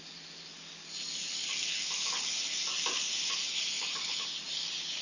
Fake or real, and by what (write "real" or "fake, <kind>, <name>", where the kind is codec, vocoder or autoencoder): real